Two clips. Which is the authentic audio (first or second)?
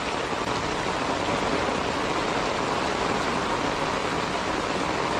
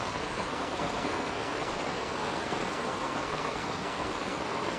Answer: first